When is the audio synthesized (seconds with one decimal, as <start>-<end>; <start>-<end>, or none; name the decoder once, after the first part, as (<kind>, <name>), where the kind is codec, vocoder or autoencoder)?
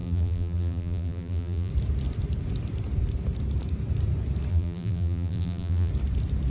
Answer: 0.0-1.7 (vocoder, BigVGAN v2); 4.5-5.9